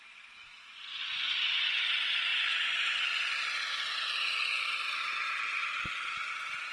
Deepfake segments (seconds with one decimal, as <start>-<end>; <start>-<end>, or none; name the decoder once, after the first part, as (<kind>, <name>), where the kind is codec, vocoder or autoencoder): none